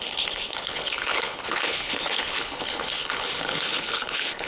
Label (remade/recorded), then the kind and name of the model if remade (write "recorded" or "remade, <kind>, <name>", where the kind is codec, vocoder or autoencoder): remade, codec, HILCodec